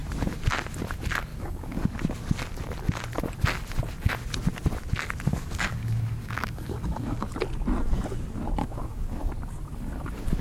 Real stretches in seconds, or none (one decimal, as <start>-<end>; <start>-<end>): 0.0-1.3; 2.0-5.3; 7.2-8.6; 9.3-10.4